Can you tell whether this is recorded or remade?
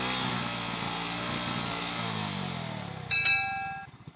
recorded